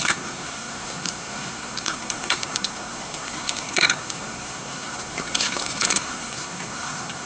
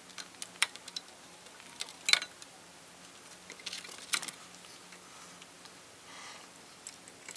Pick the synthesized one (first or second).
first